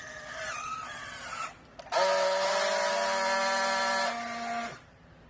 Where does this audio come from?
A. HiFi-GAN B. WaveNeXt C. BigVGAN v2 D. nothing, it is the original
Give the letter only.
D